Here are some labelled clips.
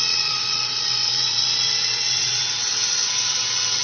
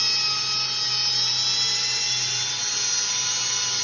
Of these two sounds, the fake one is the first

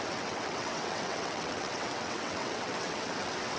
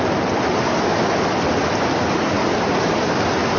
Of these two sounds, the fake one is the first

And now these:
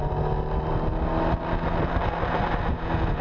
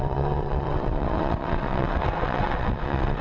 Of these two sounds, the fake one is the second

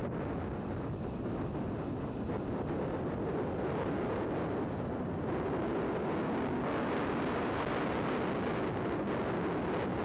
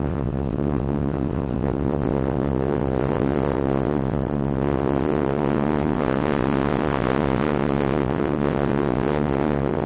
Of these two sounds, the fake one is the second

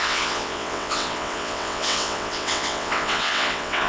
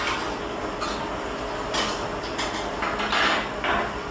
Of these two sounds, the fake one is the first